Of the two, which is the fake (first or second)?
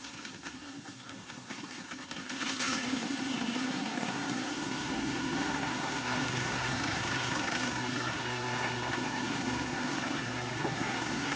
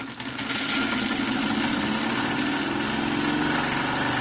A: first